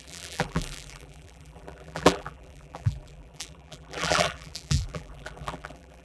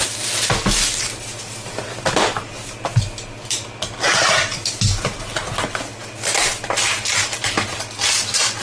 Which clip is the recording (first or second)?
second